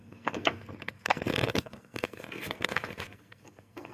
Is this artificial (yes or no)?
yes